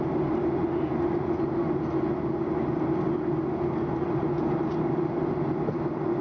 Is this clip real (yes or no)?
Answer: yes